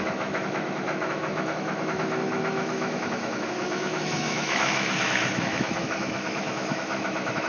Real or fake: fake